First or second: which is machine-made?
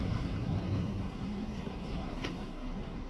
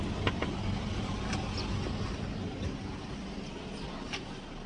first